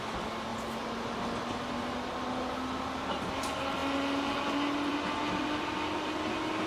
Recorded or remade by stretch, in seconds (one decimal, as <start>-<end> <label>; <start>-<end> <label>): 0.0-6.7 recorded